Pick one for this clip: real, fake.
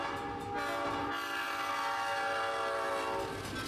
real